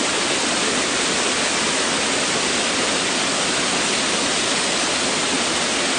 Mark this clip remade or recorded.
recorded